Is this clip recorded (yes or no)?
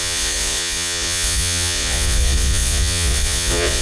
no